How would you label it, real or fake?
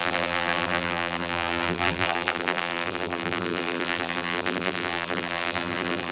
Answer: fake